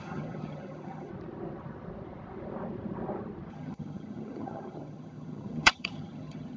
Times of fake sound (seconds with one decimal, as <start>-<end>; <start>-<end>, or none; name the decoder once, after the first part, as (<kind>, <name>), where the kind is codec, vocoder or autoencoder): 0.0-1.1 (vocoder, HiFi-GAN); 3.5-6.6